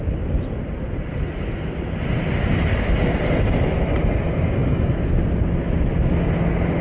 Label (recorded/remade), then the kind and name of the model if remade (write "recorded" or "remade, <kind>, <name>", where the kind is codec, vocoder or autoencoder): recorded